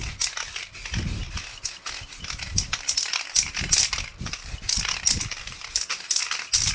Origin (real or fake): real